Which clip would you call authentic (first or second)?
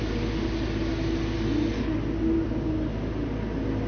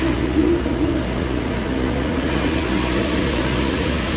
first